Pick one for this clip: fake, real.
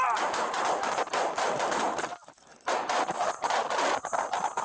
real